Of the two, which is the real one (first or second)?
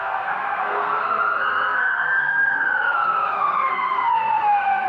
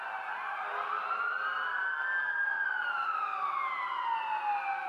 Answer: second